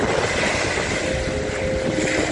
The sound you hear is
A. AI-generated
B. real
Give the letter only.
B